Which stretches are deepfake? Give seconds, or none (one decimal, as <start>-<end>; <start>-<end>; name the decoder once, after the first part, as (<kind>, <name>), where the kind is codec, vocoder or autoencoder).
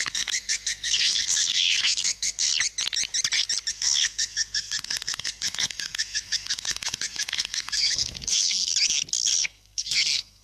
0.0-2.5 (codec, SNAC); 3.7-8.7; 9.4-10.4